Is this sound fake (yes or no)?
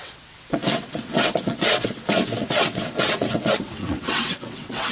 yes